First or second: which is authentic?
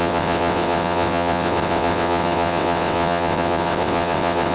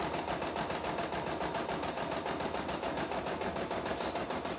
second